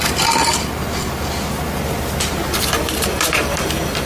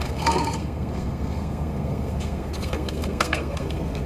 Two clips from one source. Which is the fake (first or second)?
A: second